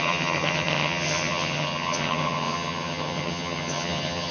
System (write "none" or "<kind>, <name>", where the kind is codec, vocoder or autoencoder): vocoder, HiFi-GAN